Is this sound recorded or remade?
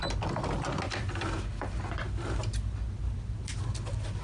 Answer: recorded